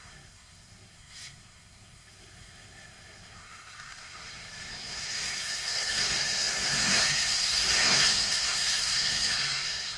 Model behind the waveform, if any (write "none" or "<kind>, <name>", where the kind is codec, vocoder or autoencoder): codec, SNAC